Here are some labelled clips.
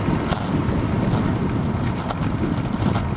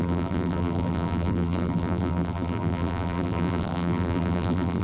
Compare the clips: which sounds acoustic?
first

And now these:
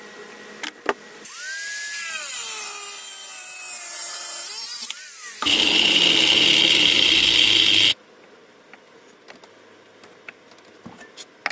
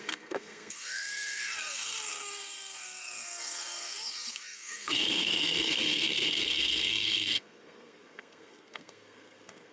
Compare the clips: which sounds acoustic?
first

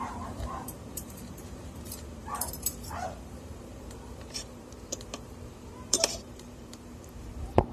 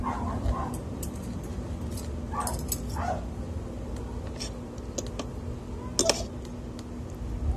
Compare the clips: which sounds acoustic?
second